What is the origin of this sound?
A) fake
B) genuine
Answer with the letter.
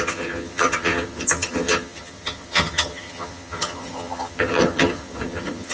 A